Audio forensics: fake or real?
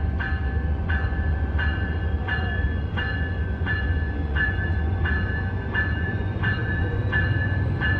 fake